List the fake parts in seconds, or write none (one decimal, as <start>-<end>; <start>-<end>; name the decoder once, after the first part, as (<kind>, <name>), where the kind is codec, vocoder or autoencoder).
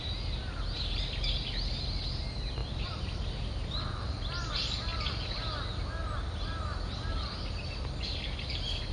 2.6-4.5 (vocoder, BigVGAN v2); 4.9-5.4; 6.0-7.1